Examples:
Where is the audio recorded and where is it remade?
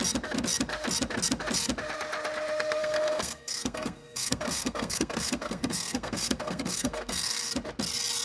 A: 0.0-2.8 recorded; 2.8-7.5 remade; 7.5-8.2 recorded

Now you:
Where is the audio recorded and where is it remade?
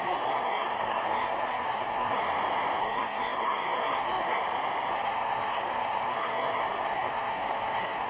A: 0.0-2.2 remade; 2.2-2.8 recorded; 2.8-4.4 remade; 4.4-4.9 recorded; 4.9-8.1 remade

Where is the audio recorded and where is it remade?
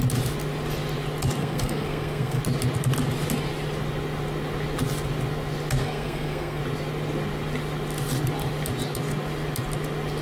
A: 0.0-1.4 recorded; 1.4-2.4 remade; 2.4-5.8 recorded; 5.8-6.6 remade; 6.6-10.2 recorded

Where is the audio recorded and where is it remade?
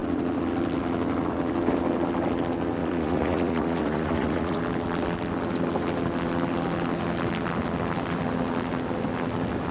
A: 0.0-2.8 recorded; 2.8-4.6 remade; 4.6-9.7 recorded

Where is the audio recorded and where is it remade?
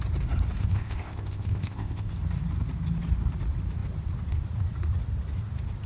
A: 0.0-0.6 recorded; 0.6-2.1 remade; 2.1-5.9 recorded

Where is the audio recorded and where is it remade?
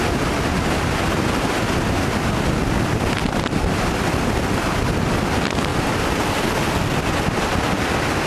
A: 0.0-3.2 recorded; 3.2-4.0 remade; 4.0-8.3 recorded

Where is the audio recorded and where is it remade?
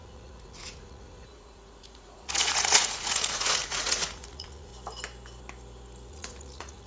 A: 0.0-4.7 remade; 4.7-6.1 recorded; 6.1-6.9 remade